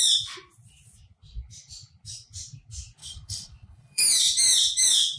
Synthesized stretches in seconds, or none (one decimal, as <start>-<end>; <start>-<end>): 3.0-4.0

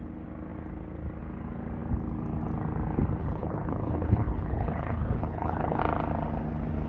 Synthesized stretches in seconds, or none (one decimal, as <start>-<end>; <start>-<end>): 3.2-5.8

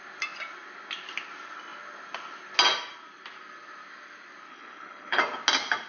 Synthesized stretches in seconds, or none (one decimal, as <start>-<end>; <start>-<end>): 4.5-5.2

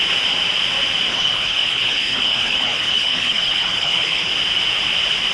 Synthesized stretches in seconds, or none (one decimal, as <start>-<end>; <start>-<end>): 1.1-4.3

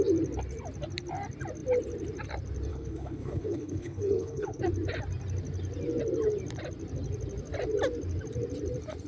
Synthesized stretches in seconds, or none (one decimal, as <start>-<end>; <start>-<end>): 2.7-4.6

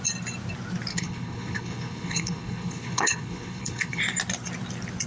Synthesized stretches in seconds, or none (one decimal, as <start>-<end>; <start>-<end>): 0.9-4.0

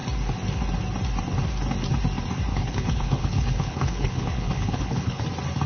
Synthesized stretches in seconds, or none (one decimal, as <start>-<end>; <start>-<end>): 2.5-5.2

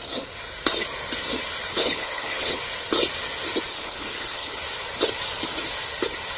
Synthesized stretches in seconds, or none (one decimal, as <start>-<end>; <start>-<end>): 1.7-2.6; 3.7-4.6